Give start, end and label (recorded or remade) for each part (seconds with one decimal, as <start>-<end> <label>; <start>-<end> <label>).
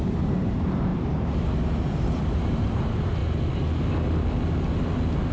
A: 0.0-3.2 remade; 3.2-5.3 recorded